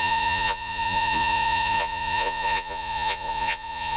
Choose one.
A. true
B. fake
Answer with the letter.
B